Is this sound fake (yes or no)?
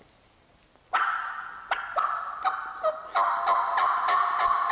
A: no